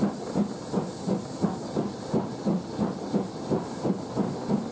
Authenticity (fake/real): real